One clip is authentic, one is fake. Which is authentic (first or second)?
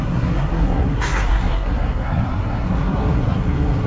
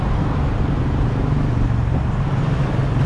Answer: second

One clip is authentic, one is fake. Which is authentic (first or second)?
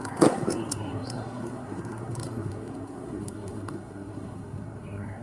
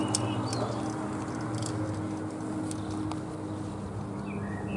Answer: second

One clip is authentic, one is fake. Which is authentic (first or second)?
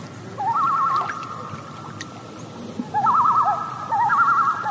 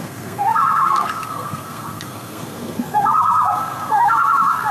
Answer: first